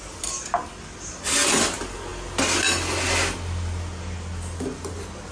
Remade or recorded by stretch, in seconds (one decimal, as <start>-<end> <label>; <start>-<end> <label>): 0.0-5.3 recorded

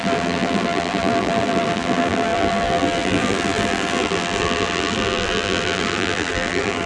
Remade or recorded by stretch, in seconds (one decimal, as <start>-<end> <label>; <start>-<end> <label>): 0.0-6.9 remade

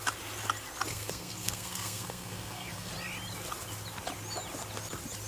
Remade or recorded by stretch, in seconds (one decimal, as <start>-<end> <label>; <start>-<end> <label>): 0.0-0.9 recorded; 0.9-2.9 remade; 2.9-5.3 recorded

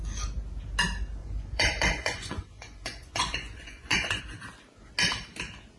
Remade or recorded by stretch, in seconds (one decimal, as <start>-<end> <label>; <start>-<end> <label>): 0.0-1.2 recorded; 1.2-4.2 remade; 4.2-5.8 recorded

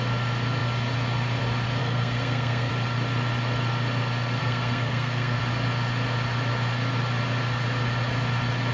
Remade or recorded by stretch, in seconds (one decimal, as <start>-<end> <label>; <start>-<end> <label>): 0.0-1.8 recorded; 1.8-2.7 remade; 2.7-4.4 recorded; 4.4-5.4 remade; 5.4-8.7 recorded

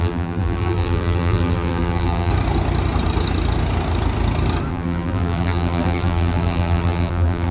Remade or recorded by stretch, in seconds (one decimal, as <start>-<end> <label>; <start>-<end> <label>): 0.0-2.3 remade; 2.3-4.7 recorded; 4.7-7.5 remade

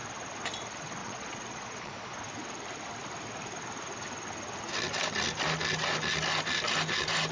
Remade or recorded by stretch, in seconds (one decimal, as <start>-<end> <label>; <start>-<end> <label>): 0.0-1.0 recorded; 1.0-1.9 remade; 1.9-7.3 recorded